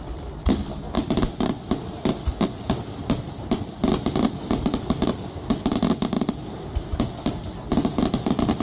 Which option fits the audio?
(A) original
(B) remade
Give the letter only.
A